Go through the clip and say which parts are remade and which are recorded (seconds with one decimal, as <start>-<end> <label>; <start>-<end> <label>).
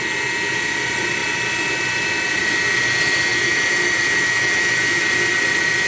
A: 0.0-3.3 recorded; 3.3-5.0 remade; 5.0-5.9 recorded